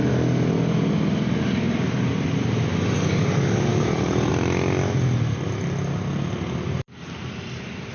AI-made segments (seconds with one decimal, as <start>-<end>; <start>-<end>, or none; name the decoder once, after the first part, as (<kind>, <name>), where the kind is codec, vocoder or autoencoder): 3.7-4.3 (vocoder, BigVGAN v2)